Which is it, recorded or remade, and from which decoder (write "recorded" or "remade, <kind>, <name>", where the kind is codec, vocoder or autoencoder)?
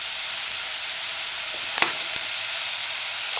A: recorded